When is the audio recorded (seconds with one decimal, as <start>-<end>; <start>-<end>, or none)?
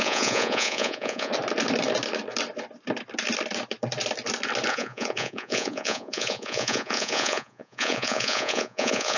1.3-4.7